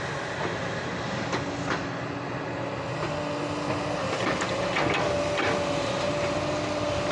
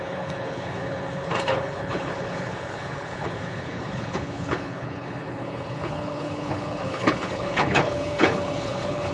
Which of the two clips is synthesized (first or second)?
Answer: second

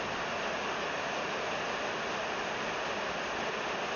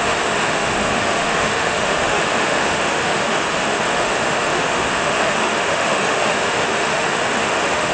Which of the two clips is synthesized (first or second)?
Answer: second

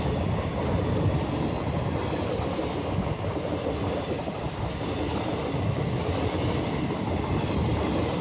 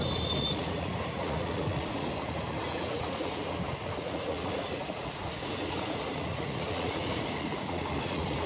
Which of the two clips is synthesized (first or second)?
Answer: second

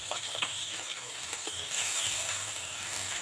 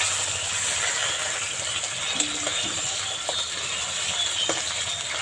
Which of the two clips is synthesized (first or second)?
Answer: first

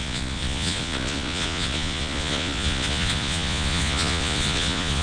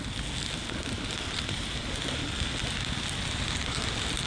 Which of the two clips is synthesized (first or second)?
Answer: first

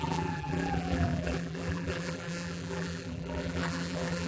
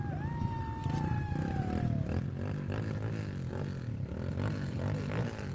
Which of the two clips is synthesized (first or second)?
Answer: first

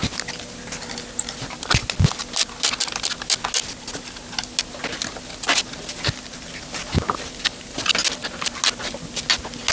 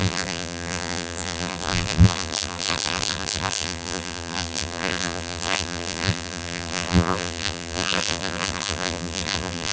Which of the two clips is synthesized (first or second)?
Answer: second